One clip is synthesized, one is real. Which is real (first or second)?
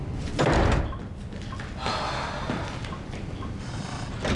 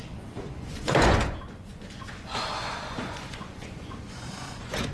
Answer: first